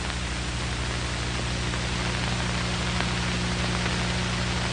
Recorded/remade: recorded